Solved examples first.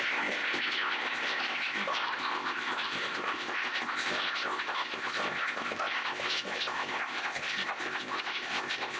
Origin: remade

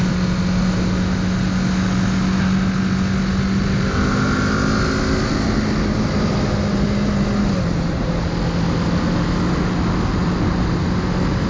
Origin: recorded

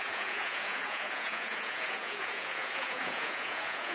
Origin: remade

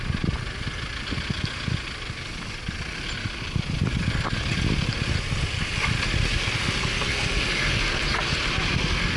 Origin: recorded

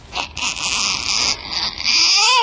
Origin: recorded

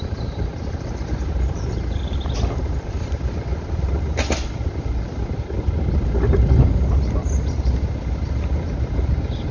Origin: recorded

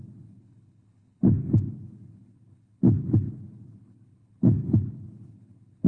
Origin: remade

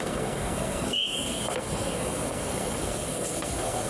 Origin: remade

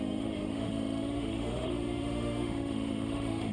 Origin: remade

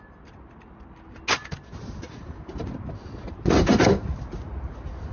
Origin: recorded